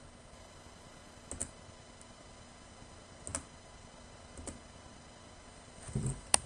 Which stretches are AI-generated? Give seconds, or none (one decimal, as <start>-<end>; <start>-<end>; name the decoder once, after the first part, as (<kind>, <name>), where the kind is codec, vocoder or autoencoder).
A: none